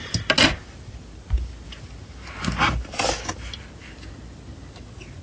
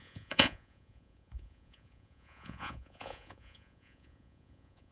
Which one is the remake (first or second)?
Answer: second